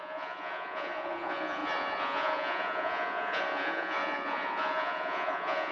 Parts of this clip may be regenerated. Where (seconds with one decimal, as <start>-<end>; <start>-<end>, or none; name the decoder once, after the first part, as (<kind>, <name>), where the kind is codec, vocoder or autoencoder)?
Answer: 0.0-5.7 (vocoder, Vocos)